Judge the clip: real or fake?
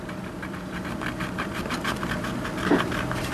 fake